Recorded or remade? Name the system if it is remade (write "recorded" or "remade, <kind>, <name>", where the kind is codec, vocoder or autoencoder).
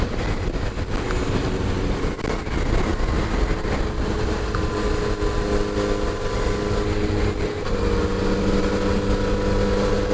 recorded